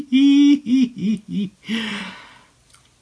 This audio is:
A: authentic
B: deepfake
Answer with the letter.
A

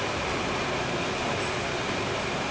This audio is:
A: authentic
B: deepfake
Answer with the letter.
A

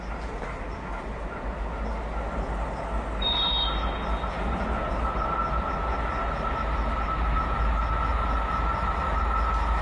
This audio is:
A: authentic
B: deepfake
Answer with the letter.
A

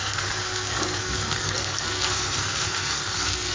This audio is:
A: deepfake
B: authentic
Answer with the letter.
A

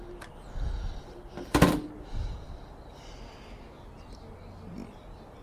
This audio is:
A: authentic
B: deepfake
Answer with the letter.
A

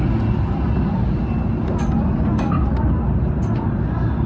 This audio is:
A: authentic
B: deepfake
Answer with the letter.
A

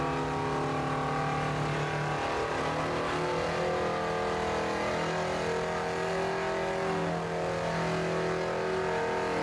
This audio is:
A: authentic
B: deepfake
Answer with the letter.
A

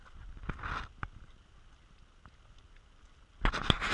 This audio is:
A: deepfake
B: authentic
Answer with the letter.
B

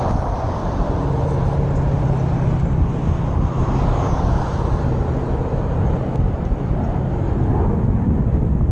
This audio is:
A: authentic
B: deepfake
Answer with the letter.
A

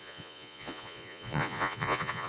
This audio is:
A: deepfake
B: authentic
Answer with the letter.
A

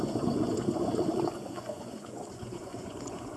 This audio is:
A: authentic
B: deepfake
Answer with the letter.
B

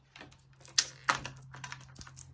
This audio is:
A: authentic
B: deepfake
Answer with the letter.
A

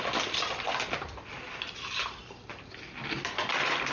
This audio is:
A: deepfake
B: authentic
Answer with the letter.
B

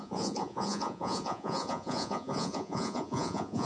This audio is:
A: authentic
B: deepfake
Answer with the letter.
B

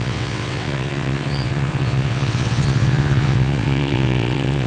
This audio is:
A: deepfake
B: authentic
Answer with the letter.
A